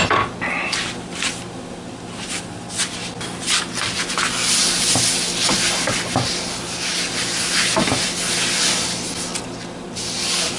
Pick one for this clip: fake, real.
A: real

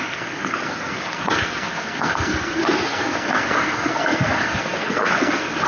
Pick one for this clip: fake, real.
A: fake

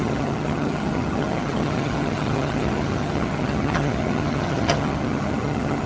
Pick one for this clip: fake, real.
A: fake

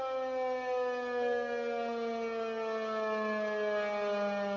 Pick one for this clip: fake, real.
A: real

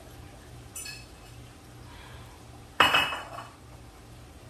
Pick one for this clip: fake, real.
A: fake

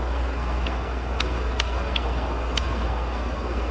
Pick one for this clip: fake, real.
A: fake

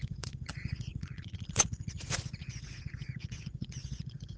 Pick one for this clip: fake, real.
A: fake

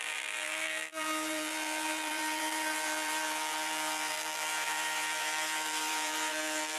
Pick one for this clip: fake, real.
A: fake